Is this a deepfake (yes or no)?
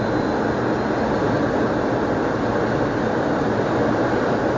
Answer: no